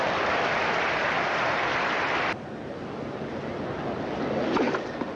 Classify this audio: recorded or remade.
recorded